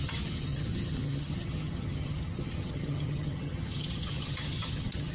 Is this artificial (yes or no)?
yes